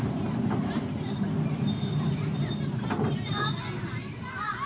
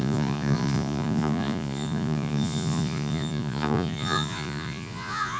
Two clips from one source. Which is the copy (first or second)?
second